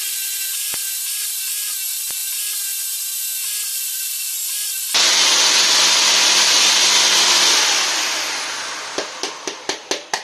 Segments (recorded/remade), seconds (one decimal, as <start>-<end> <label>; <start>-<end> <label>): 0.0-10.2 recorded